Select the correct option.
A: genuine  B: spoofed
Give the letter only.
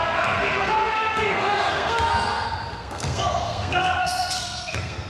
B